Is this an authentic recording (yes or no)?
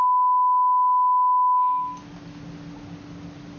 yes